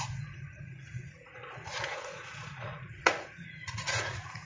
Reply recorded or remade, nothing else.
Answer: remade